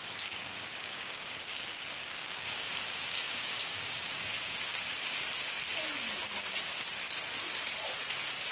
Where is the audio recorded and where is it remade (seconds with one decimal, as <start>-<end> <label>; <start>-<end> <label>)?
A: 0.0-5.1 remade; 5.1-8.5 recorded